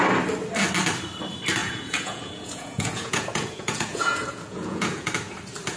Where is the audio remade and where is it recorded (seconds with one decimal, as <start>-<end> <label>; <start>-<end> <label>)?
0.0-1.6 recorded; 1.6-5.1 remade; 5.1-5.8 recorded